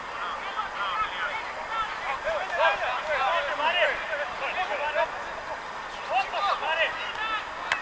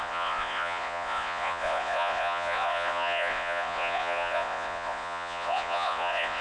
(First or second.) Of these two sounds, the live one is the first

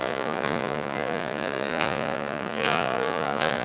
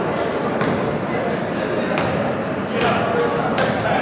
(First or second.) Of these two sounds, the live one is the second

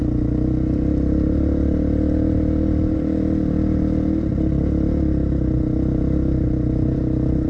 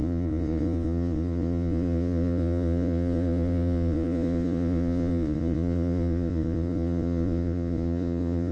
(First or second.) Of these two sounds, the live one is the first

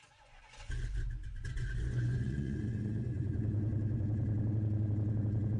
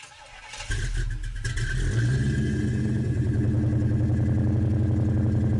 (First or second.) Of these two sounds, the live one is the second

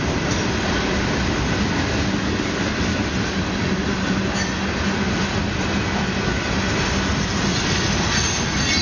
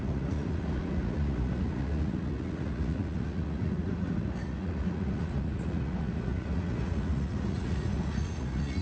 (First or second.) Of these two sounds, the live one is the first